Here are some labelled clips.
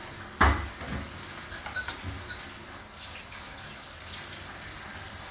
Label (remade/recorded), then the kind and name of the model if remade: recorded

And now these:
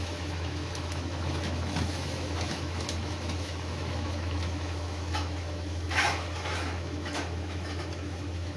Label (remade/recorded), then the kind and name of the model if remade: remade, autoencoder, DAC-VAE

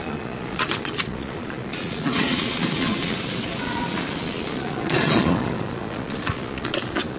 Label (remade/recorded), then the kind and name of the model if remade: remade, vocoder, Vocos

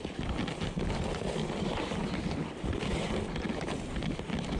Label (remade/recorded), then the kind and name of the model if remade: recorded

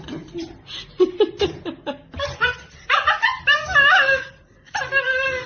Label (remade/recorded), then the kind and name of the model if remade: recorded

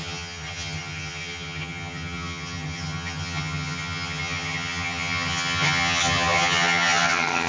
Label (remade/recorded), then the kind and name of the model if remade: remade, vocoder, HiFi-GAN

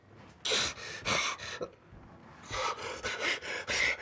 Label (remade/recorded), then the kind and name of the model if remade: recorded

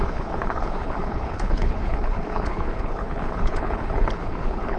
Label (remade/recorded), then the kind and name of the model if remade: remade, codec, HILCodec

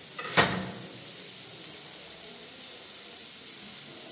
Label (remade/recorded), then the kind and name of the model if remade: recorded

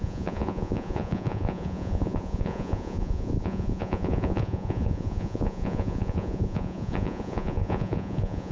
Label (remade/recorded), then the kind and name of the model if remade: remade, vocoder, Vocos